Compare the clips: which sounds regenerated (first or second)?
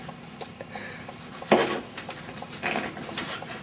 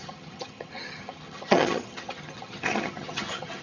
second